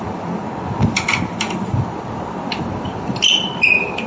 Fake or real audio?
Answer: fake